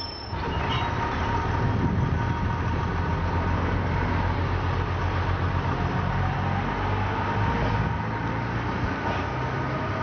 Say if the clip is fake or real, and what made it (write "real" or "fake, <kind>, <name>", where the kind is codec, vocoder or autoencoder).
real